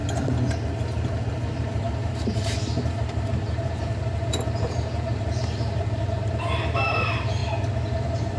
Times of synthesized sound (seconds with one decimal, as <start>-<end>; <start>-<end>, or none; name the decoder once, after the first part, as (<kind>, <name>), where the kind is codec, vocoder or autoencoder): 1.8-7.4 (vocoder, BigVGAN v2); 8.0-8.4